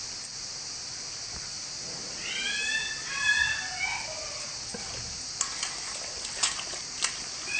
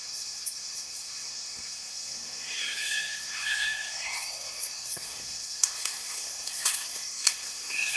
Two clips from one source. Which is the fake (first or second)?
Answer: second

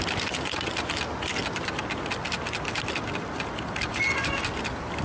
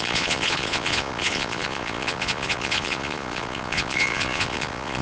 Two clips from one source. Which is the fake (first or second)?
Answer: second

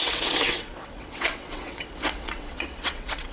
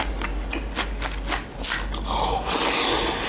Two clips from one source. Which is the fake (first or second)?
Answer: first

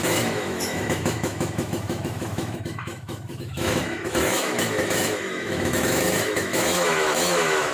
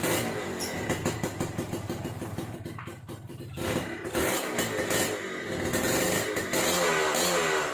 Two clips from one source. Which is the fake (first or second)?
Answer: first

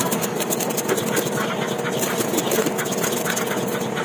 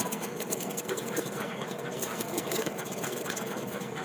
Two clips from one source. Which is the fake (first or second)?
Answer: second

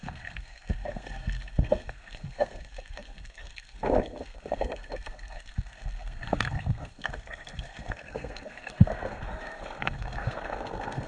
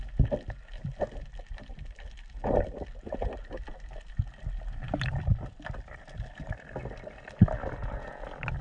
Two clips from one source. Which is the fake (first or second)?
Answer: first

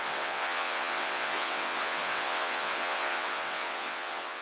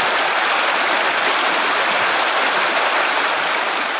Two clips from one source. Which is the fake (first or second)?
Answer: first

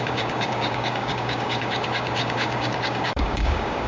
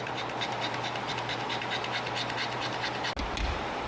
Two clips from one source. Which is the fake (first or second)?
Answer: first